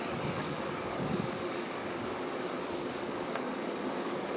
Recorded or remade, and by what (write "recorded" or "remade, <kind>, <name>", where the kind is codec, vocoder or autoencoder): remade, codec, DAC